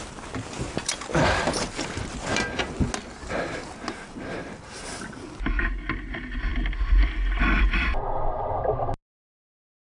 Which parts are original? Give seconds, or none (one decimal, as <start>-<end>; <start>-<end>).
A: 0.0-9.9

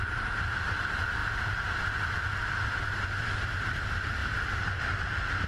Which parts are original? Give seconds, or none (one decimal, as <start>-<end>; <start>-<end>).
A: 0.0-5.5